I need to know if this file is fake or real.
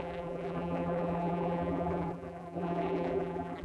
fake